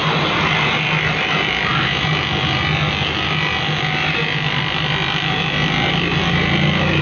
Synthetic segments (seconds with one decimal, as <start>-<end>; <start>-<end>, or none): none